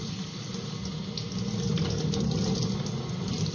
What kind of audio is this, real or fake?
real